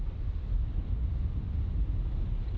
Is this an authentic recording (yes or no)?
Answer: yes